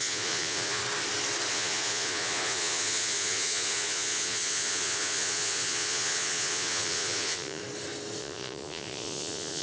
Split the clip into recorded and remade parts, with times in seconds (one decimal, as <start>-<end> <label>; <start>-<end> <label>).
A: 0.0-0.8 remade; 0.8-1.5 recorded; 1.5-7.6 remade; 7.6-8.2 recorded; 8.2-9.6 remade